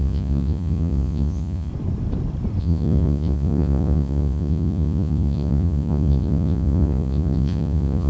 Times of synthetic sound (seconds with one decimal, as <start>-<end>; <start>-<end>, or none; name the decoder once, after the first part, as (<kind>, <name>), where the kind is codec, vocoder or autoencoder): 0.0-1.7 (vocoder, Vocos); 2.6-8.1